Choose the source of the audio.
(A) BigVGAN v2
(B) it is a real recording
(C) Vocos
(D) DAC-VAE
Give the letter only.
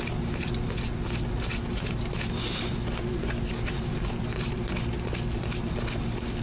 B